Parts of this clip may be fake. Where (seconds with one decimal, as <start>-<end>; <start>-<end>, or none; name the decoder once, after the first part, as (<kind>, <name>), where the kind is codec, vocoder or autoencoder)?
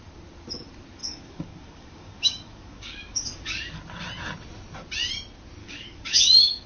1.0-3.8 (codec, DAC); 5.6-6.7